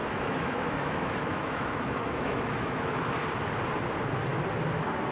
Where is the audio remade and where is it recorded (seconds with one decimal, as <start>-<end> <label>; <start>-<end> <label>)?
0.0-3.1 remade; 3.1-5.1 recorded